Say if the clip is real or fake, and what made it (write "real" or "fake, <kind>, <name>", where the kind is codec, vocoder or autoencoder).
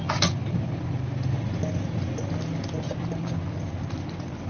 real